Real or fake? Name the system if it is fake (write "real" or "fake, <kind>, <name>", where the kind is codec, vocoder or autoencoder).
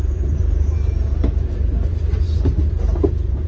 fake, vocoder, BigVGAN v2